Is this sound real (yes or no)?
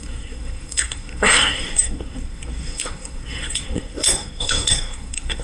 no